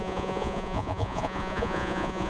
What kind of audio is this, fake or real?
fake